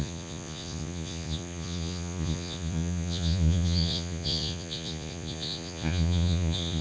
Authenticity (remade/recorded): remade